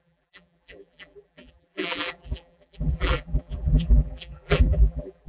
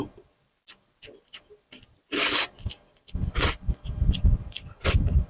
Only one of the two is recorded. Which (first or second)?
second